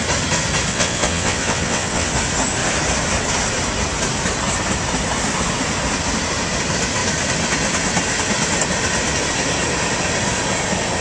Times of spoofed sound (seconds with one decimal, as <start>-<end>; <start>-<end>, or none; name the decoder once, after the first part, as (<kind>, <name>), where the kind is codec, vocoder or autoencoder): 0.7-2.1 (vocoder, WaveNeXt)